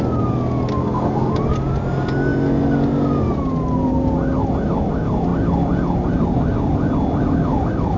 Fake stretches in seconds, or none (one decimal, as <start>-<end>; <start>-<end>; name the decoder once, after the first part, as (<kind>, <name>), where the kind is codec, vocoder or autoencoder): 0.8-1.3 (codec, SNAC)